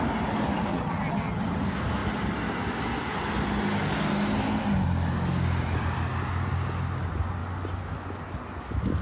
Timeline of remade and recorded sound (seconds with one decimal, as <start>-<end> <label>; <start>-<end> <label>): 0.0-0.7 recorded; 0.7-1.4 remade; 1.4-9.0 recorded